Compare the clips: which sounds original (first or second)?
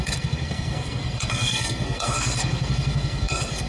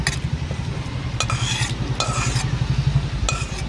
second